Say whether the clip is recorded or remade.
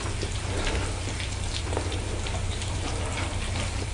recorded